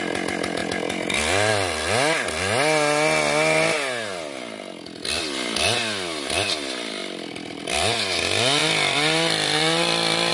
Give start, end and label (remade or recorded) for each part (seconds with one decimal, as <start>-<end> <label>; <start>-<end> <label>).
0.0-7.0 recorded; 7.0-7.6 remade; 7.6-8.6 recorded; 8.6-10.3 remade